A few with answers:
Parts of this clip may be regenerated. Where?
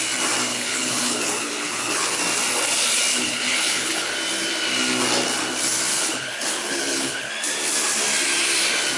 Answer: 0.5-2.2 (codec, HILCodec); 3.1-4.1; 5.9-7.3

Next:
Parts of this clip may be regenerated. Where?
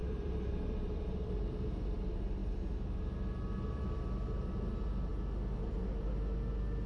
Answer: 0.0-1.6 (vocoder, BigVGAN v2)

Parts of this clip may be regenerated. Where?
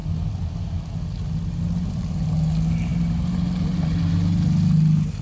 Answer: none